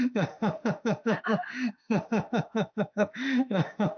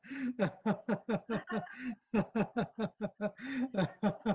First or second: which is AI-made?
first